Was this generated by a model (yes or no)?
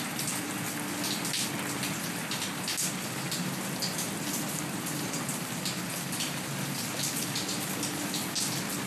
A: no